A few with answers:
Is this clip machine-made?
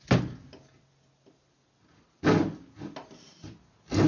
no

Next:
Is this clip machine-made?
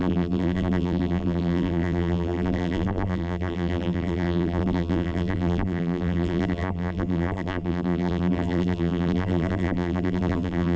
yes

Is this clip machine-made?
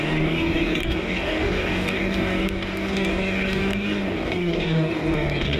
yes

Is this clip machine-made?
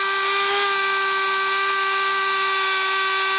no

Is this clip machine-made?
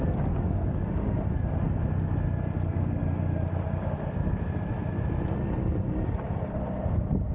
no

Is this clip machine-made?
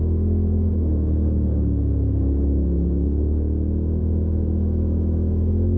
yes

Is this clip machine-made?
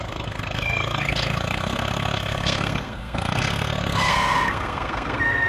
yes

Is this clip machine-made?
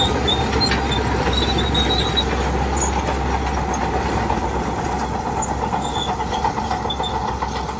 no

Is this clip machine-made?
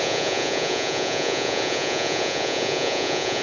yes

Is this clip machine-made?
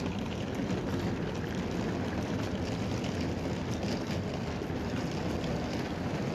no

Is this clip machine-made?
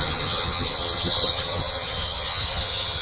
yes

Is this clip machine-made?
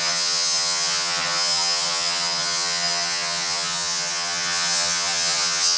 yes